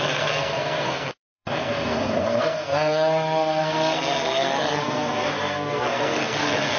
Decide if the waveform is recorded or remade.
remade